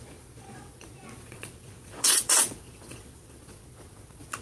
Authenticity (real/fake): fake